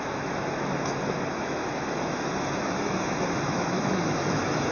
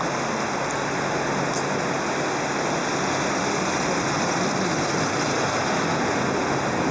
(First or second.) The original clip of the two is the second